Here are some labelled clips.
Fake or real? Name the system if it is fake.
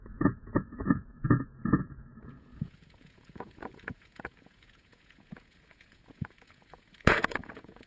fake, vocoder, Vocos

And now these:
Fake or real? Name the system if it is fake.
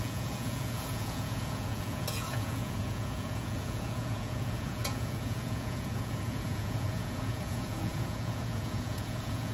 fake, vocoder, Vocos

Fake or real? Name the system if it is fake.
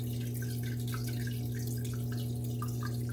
real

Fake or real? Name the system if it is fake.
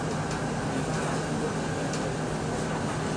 real